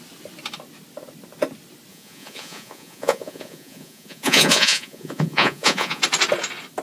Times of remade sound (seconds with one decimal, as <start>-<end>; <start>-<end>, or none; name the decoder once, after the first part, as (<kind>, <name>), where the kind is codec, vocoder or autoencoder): 1.9-6.0 (vocoder, Vocos)